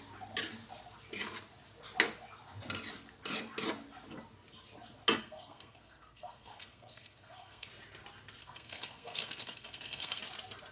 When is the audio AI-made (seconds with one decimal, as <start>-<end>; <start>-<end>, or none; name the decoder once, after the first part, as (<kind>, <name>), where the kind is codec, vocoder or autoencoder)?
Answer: 5.2-7.7 (codec, SNAC); 8.4-10.2